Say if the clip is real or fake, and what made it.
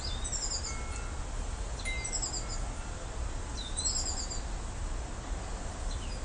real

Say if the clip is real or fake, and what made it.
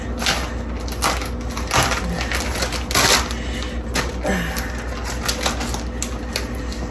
real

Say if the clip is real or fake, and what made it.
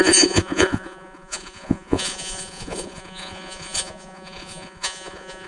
fake, vocoder, Vocos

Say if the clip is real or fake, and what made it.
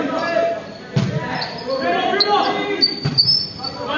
real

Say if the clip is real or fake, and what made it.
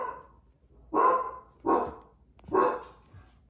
real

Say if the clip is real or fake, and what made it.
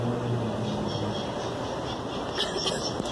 real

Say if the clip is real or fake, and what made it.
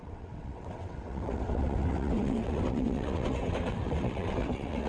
fake, vocoder, WaveNeXt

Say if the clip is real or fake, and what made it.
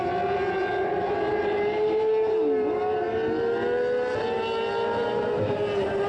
real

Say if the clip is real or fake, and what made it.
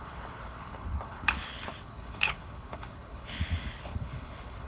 fake, codec, HILCodec